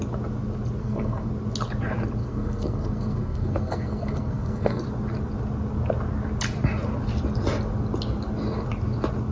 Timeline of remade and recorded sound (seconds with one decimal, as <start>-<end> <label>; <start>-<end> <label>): 0.0-0.8 recorded; 0.8-1.3 remade; 1.3-2.2 recorded; 2.2-4.8 remade; 4.8-9.3 recorded